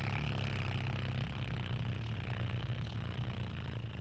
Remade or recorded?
recorded